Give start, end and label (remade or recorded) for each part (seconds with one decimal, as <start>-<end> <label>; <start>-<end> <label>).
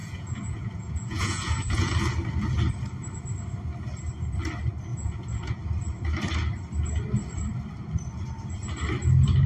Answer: 0.0-1.9 remade; 1.9-4.9 recorded; 4.9-5.6 remade; 5.6-9.5 recorded